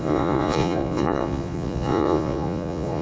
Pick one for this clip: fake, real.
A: fake